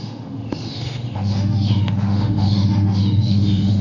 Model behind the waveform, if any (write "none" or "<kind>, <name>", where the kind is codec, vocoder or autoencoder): autoencoder, DAC-VAE